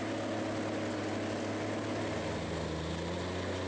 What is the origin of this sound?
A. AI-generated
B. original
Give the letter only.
B